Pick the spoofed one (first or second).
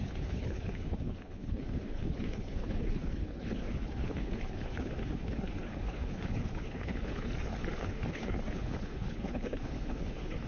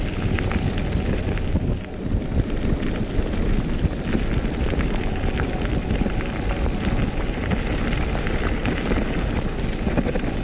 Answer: first